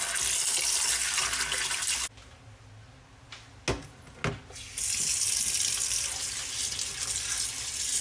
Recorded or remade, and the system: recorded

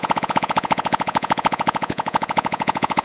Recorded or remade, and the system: remade, vocoder, Vocos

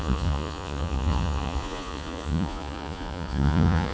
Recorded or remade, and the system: remade, vocoder, Vocos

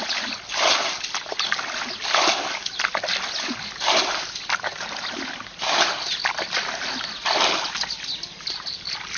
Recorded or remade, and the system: recorded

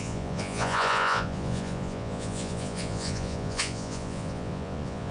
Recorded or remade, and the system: remade, vocoder, Vocos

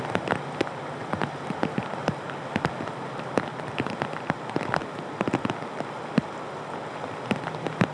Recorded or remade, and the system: recorded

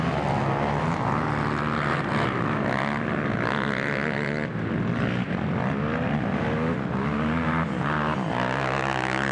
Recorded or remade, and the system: recorded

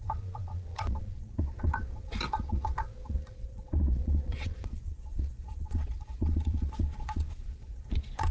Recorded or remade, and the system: remade, vocoder, Vocos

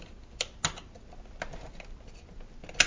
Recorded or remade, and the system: recorded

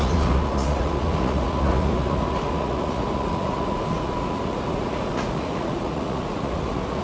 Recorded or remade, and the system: remade, vocoder, Vocos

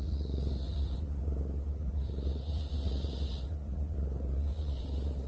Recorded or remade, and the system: remade, vocoder, Vocos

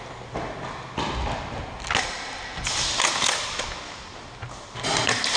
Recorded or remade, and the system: recorded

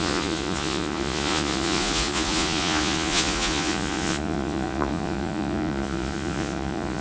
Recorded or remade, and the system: remade, vocoder, Vocos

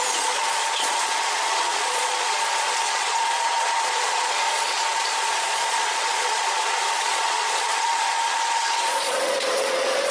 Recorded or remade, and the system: remade, vocoder, Vocos